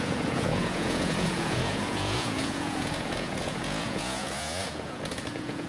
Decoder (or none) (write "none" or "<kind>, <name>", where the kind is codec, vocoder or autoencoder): vocoder, Vocos